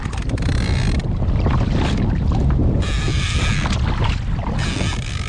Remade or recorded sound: recorded